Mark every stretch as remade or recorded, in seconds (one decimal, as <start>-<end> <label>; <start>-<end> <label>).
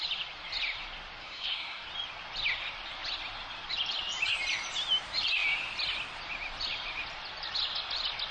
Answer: 0.0-1.2 recorded; 1.2-1.9 remade; 1.9-8.3 recorded